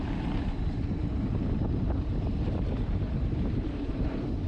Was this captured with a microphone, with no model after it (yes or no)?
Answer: no